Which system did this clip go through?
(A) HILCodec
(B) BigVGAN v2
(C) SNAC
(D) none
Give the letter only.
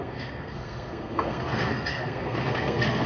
C